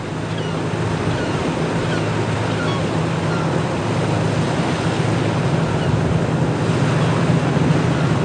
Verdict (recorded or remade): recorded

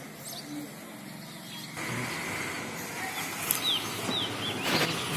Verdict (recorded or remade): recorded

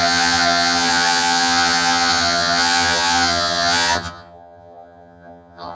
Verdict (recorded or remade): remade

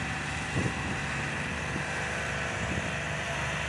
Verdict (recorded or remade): remade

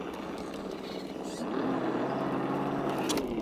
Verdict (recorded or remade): recorded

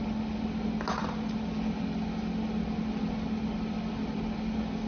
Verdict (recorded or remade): recorded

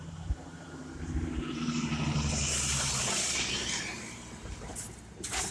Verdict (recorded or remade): remade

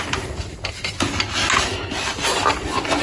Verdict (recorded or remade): recorded